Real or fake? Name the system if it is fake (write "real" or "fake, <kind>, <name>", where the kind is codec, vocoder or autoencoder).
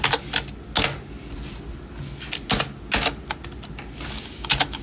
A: real